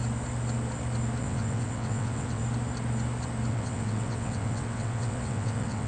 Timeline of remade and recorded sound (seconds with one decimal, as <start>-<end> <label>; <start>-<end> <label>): 0.0-1.2 recorded; 1.2-2.4 remade; 2.4-3.5 recorded; 3.5-5.9 remade